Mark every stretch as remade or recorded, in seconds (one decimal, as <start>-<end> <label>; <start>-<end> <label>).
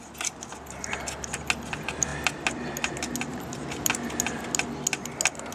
0.0-3.3 recorded; 3.3-3.9 remade; 3.9-5.5 recorded